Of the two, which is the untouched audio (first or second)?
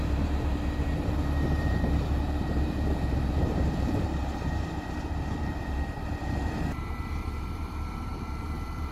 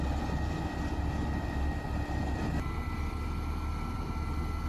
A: second